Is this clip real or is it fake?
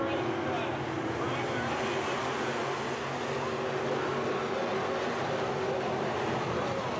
real